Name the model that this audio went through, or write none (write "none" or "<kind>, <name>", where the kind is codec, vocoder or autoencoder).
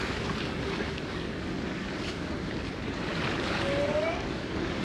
codec, DAC